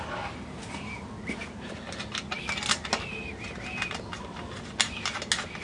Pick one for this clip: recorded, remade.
recorded